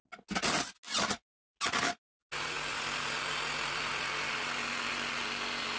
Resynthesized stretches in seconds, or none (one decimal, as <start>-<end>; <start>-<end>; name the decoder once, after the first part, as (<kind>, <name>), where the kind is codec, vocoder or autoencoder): none

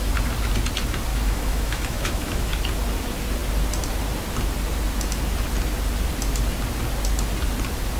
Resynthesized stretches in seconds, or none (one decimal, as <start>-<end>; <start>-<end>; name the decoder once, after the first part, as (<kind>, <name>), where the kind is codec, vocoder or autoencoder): 1.1-2.5 (autoencoder, DAC-VAE)

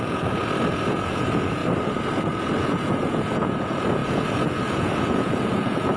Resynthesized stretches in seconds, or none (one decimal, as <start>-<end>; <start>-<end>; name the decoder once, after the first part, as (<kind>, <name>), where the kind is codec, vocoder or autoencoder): 0.0-0.4 (vocoder, Vocos); 0.9-1.6; 2.6-6.0